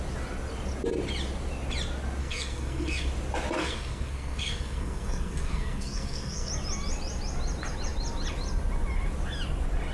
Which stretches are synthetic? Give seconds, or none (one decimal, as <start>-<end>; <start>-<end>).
2.2-3.1; 3.6-6.5

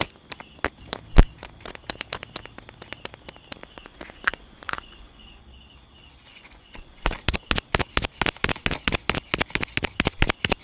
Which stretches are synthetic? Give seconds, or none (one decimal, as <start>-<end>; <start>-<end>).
3.6-5.4; 6.3-7.2

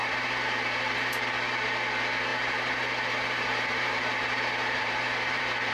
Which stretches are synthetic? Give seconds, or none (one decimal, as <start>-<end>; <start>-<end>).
0.0-1.1; 2.3-5.7

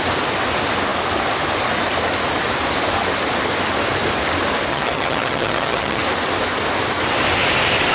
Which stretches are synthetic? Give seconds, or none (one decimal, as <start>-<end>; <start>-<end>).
4.7-6.0

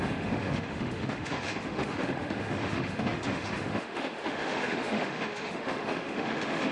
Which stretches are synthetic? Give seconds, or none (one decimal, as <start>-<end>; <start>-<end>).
0.0-6.7

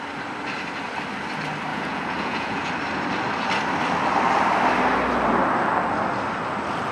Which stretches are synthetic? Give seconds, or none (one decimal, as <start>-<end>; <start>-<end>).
1.7-2.7

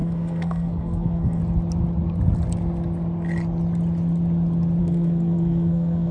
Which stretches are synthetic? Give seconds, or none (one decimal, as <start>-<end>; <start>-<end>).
0.0-1.4; 4.8-6.1

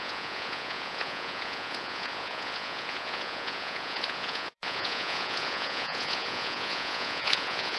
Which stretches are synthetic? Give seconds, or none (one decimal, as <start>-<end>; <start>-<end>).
0.0-7.8